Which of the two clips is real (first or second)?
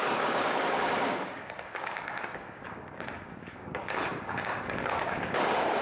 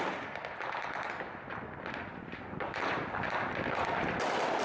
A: second